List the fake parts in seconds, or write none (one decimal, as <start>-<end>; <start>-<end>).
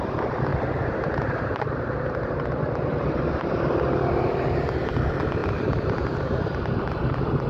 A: 0.5-3.3; 5.4-6.9